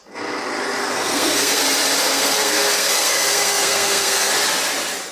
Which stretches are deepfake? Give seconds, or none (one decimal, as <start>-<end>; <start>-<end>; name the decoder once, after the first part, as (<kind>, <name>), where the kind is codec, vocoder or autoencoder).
0.8-1.6 (codec, SNAC); 2.1-4.3